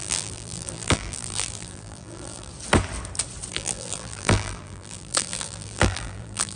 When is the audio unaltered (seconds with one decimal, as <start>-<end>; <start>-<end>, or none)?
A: 2.5-3.5